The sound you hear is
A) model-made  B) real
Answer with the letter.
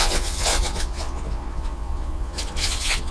A